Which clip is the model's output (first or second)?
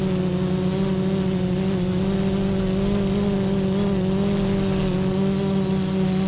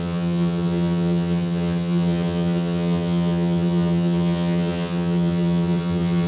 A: second